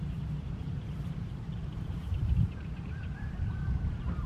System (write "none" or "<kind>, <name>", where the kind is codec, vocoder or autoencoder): vocoder, BigVGAN v2